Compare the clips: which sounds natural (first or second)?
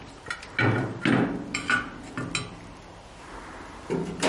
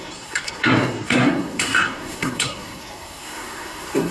first